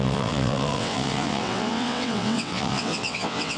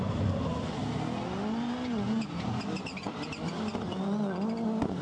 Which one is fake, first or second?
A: first